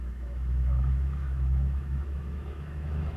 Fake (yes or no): yes